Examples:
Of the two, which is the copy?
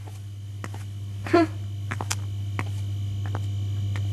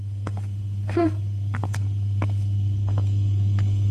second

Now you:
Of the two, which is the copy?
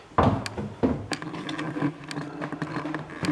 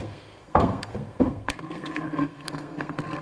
second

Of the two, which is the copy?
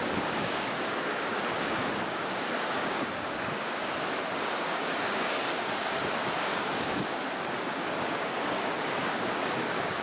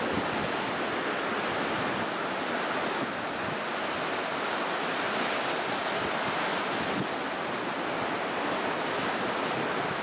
first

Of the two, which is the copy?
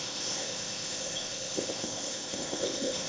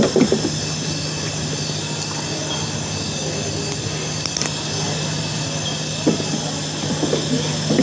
first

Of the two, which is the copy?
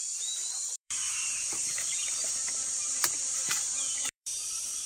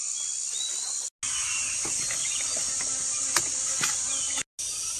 first